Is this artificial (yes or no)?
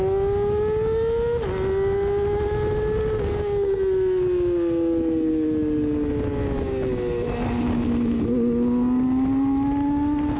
no